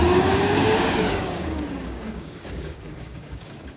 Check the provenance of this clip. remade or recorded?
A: remade